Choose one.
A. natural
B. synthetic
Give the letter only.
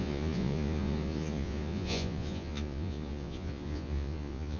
B